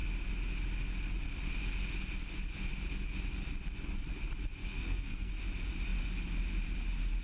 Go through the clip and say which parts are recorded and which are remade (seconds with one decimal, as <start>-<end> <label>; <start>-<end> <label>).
0.0-4.6 recorded; 4.6-5.3 remade; 5.3-7.2 recorded